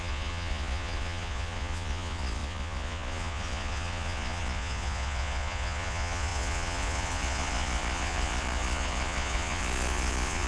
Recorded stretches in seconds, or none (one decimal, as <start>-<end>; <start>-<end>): none